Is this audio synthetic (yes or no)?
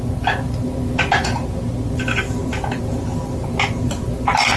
no